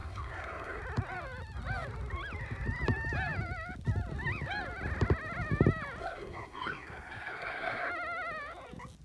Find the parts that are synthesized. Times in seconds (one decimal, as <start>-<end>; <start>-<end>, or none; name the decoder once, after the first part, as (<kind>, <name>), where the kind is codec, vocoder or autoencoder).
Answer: 0.0-0.8 (codec, SNAC); 6.0-7.9